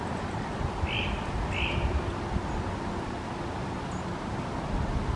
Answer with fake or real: real